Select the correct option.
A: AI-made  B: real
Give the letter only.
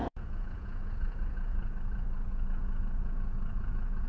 A